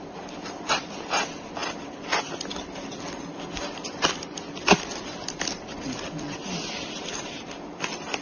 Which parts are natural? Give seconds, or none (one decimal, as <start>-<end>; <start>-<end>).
none